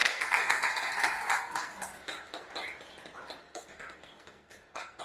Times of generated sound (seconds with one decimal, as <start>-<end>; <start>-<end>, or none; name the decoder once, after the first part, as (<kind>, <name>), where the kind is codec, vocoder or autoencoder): 0.0-2.5 (codec, SNAC); 3.4-5.0